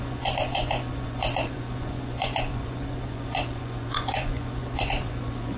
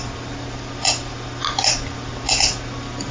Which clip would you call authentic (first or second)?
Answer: second